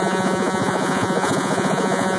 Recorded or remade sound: remade